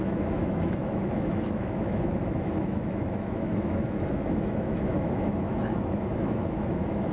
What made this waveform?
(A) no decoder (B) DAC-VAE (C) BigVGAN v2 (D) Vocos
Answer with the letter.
B